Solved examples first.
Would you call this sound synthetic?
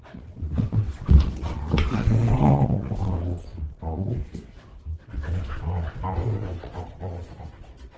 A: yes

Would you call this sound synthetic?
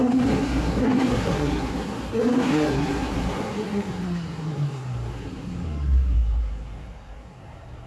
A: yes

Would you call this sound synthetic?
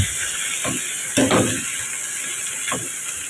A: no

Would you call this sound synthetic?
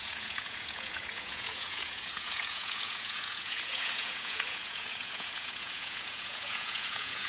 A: yes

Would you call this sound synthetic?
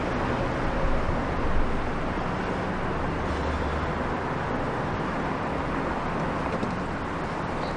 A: no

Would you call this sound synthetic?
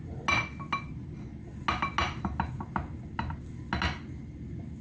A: no